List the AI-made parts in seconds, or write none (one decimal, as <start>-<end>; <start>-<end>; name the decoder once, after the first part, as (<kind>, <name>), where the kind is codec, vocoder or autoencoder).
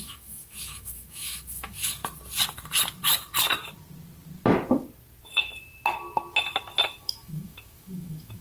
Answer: 0.0-2.0 (autoencoder, DAC-VAE); 7.0-8.4